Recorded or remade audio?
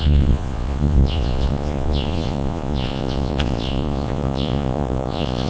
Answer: remade